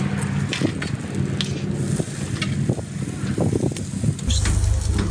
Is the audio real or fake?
real